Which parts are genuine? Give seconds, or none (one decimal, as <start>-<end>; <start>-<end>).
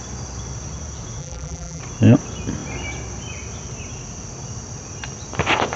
0.0-1.2; 1.8-5.8